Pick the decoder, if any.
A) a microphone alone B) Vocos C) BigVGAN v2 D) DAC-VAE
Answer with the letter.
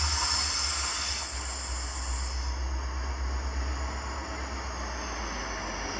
A